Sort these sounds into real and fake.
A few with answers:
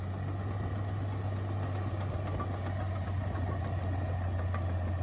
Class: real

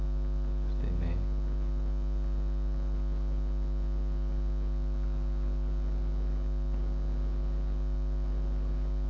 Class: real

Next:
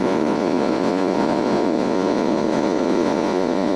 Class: fake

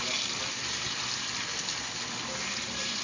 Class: real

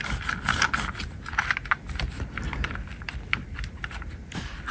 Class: real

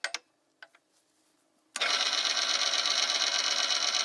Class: real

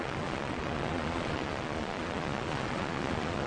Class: fake